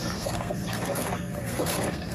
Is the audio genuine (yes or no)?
no